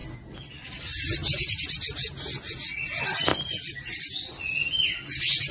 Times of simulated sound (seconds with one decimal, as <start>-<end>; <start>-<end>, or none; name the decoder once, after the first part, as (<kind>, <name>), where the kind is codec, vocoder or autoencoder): none